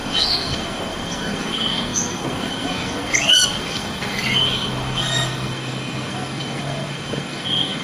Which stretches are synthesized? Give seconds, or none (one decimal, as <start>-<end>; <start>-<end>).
0.0-7.8